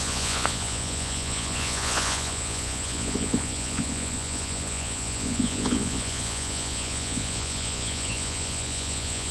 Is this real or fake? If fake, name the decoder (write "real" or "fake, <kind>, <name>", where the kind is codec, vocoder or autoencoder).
fake, vocoder, Vocos